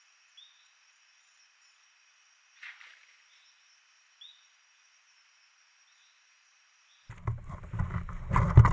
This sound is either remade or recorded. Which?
recorded